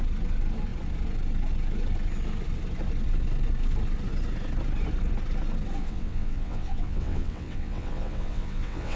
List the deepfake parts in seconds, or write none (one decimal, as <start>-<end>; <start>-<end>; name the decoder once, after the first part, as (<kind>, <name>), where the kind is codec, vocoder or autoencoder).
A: 5.8-9.0 (vocoder, WaveNeXt)